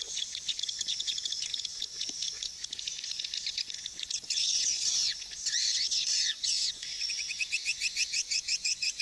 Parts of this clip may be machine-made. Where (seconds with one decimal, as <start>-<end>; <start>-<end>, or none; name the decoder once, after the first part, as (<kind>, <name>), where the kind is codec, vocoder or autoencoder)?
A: 0.0-9.0 (vocoder, Vocos)